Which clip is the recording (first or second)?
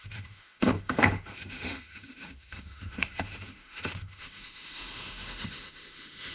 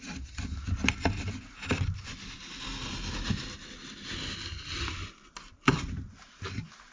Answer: second